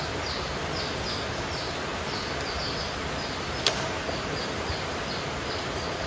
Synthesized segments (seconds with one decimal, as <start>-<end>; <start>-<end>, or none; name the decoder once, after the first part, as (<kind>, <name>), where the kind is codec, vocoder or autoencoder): none

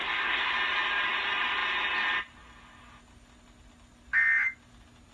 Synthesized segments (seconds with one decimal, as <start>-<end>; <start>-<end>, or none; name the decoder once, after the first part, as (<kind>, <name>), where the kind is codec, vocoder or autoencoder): 0.0-0.5 (codec, SNAC)

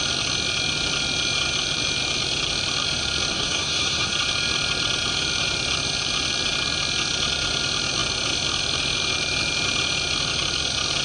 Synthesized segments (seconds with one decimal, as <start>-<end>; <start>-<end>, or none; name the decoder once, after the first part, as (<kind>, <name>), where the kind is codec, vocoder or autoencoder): 3.3-4.1 (codec, SNAC)

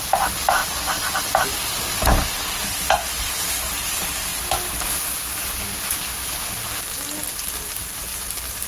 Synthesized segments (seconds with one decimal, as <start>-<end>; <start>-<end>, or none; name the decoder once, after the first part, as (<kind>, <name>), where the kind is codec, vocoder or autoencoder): none